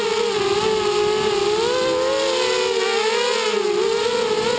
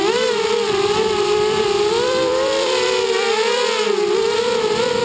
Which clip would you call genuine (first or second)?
first